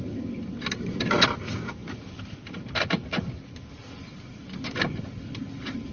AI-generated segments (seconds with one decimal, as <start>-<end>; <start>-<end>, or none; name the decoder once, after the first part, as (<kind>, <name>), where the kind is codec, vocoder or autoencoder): none